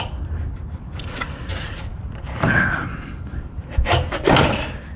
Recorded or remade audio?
recorded